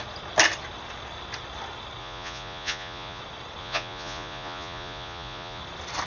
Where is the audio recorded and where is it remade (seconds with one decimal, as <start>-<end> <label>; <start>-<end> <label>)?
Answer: 0.0-2.0 recorded; 2.0-3.2 remade; 3.2-3.6 recorded; 3.6-5.6 remade; 5.6-6.1 recorded